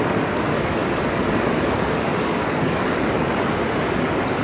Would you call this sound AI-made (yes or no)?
yes